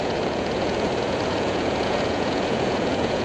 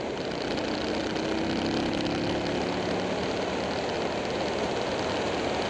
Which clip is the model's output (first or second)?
first